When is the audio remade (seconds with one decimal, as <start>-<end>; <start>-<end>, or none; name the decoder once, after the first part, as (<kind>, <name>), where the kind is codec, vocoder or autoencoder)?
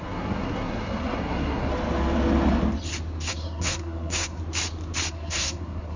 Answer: 0.0-1.7 (codec, SNAC); 3.3-4.4; 5.1-6.0